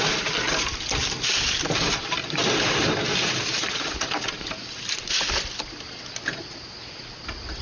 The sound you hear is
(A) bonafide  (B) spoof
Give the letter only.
A